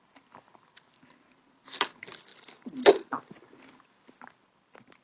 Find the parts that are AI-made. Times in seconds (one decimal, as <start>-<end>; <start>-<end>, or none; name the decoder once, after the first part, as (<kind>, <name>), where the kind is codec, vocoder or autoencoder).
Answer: none